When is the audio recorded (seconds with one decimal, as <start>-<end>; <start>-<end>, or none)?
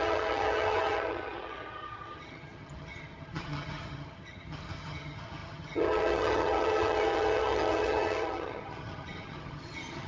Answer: none